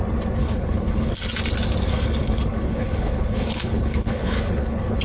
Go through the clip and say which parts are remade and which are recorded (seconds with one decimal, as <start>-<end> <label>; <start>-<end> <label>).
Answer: 0.0-0.4 recorded; 0.4-1.1 remade; 1.1-1.9 recorded; 1.9-5.0 remade